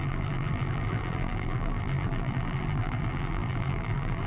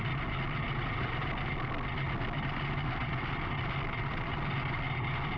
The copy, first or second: first